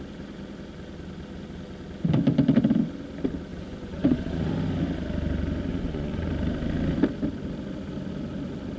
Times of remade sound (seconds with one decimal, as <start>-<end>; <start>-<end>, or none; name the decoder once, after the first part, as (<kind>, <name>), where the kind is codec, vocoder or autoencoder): 3.5-4.5 (vocoder, Vocos); 5.7-6.3